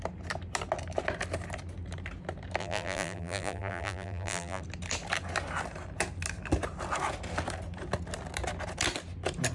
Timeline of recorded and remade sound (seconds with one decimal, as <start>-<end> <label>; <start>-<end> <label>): 0.0-2.6 recorded; 2.6-4.6 remade; 4.6-9.5 recorded